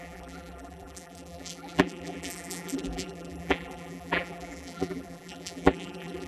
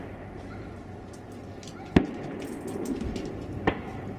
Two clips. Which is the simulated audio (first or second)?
first